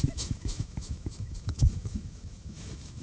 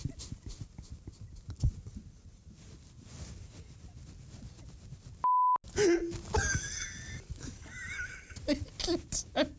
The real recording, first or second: second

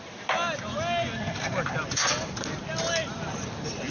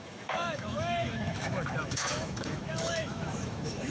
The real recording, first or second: first